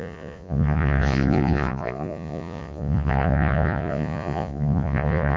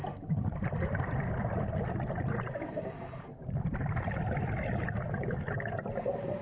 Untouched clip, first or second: second